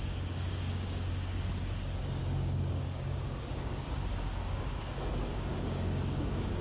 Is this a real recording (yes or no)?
no